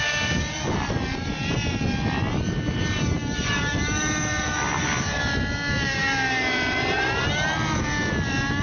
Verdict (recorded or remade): recorded